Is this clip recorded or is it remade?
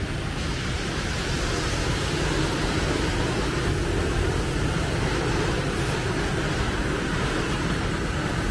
recorded